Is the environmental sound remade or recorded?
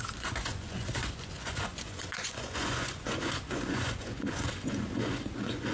remade